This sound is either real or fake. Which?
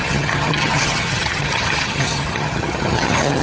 fake